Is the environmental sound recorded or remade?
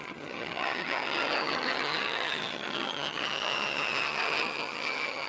remade